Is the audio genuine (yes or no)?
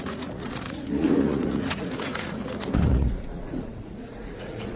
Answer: no